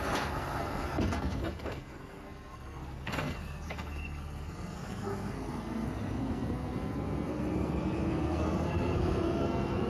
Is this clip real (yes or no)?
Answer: no